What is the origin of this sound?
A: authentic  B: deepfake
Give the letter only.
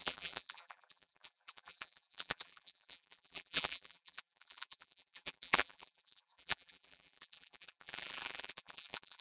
B